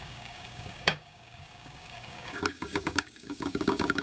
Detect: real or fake fake